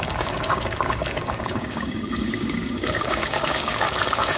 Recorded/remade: remade